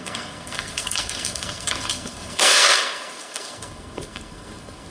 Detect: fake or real fake